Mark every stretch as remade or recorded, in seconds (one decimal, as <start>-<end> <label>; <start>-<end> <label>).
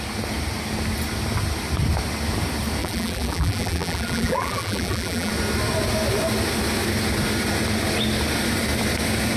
0.0-2.8 recorded; 2.8-5.3 remade; 5.3-9.4 recorded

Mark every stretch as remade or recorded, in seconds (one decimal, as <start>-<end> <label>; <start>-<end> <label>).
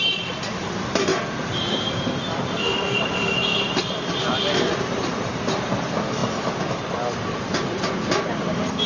0.0-8.9 remade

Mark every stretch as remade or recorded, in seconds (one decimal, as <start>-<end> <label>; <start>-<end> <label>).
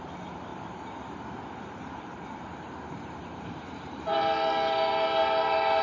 0.0-0.5 recorded; 0.5-4.0 remade; 4.0-5.8 recorded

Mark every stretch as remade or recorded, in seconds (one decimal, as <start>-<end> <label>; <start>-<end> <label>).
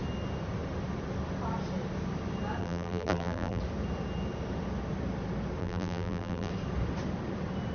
0.0-2.6 recorded; 2.6-3.6 remade; 3.6-5.6 recorded; 5.6-6.5 remade; 6.5-7.7 recorded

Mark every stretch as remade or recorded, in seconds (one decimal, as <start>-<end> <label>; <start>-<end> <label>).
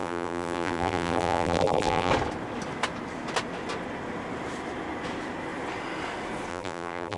0.0-2.1 remade; 2.1-6.5 recorded; 6.5-7.2 remade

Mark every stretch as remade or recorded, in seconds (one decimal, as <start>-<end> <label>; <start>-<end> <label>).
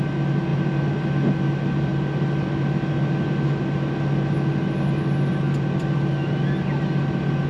0.0-7.5 recorded